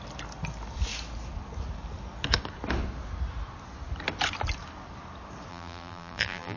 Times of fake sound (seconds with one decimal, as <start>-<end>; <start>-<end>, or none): 5.5-6.6